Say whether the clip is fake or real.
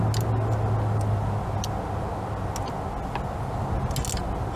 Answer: real